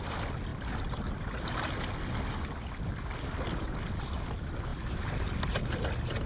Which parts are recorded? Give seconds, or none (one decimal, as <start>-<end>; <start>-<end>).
0.0-6.3